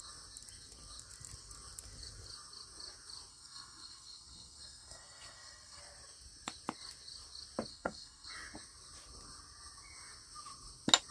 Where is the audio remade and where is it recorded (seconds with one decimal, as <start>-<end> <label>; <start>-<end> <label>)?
0.0-3.3 recorded; 3.3-5.8 remade; 5.8-7.7 recorded; 7.7-8.3 remade; 8.3-11.1 recorded